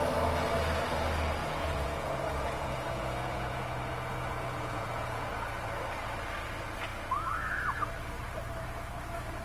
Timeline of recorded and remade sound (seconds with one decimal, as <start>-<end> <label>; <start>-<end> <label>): 0.0-1.4 recorded; 1.4-5.3 remade; 5.3-9.4 recorded